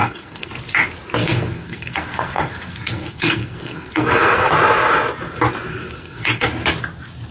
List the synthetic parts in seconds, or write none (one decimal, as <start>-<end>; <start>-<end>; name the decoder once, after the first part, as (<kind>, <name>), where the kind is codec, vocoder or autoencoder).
0.0-0.5 (codec, SNAC); 1.2-4.5; 5.7-6.5